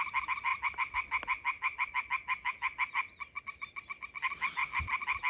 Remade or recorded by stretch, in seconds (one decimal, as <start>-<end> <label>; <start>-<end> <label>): 0.0-5.3 recorded